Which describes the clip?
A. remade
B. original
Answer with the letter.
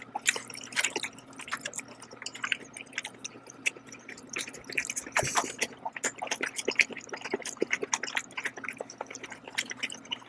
B